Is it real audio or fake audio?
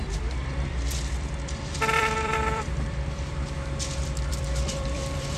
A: fake